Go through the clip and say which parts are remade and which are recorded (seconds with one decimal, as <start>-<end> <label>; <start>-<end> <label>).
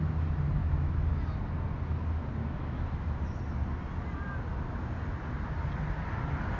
0.0-0.6 recorded; 0.6-1.2 remade; 1.2-2.4 recorded; 2.4-3.4 remade; 3.4-6.6 recorded